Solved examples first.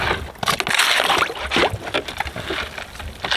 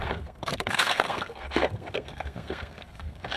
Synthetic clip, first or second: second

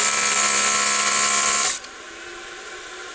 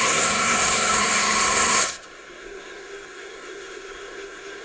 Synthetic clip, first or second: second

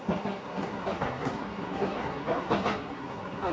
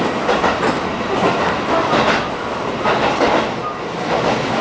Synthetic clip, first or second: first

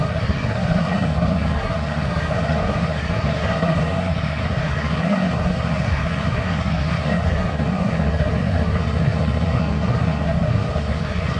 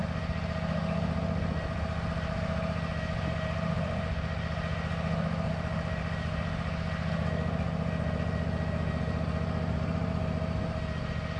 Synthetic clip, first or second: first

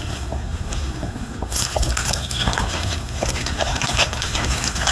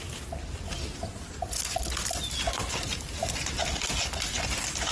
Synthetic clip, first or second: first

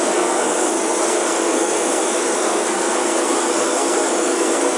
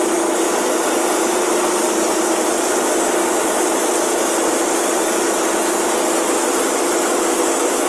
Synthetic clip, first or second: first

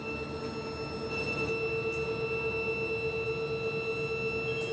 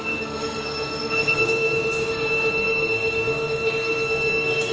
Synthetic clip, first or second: second